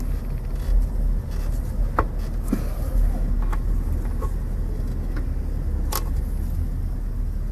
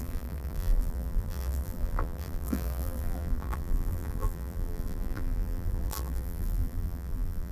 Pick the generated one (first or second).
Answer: second